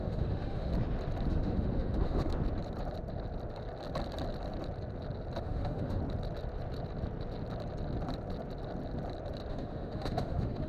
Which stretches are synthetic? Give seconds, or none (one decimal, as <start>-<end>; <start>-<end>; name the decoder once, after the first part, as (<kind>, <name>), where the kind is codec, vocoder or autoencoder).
0.0-0.7 (autoencoder, DAC-VAE); 1.3-2.3; 5.4-6.0; 9.5-10.7